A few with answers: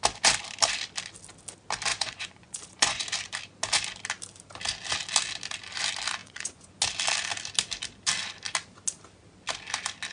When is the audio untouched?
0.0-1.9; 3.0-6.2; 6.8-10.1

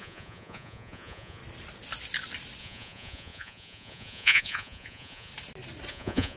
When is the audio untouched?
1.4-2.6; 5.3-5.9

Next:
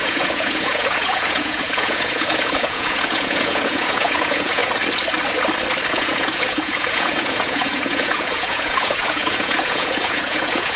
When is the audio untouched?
4.6-5.9